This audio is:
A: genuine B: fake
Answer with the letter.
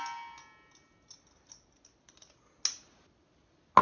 A